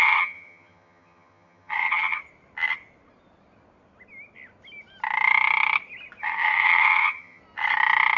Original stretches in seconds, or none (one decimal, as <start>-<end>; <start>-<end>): 2.2-6.2; 7.4-8.2